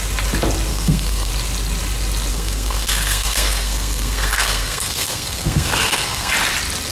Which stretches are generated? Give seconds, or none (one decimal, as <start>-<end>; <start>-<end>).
0.7-1.3; 2.3-6.3